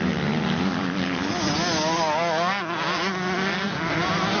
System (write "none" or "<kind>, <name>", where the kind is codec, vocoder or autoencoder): none